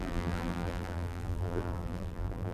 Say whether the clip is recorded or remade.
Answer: remade